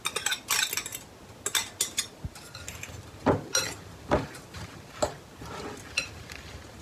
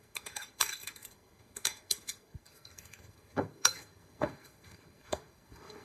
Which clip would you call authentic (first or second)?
first